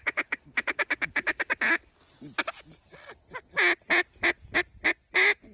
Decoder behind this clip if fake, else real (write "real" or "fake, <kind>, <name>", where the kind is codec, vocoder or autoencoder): real